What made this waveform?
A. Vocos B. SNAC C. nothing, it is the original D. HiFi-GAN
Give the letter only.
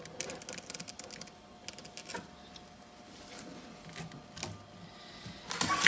C